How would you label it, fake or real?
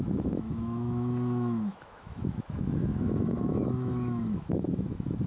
fake